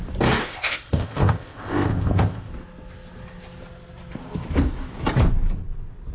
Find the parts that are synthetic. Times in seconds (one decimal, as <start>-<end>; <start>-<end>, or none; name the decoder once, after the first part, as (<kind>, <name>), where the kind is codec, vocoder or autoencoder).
0.4-2.5 (codec, ZipCodec)